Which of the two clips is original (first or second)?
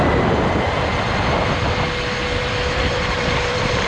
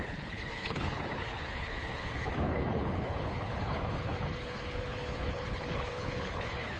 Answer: first